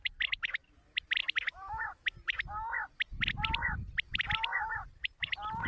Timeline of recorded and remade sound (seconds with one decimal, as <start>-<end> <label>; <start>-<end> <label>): 0.0-5.7 recorded